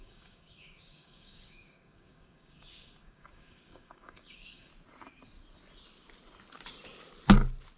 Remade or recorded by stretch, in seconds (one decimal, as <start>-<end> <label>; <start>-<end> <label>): 0.0-4.7 remade; 4.7-7.8 recorded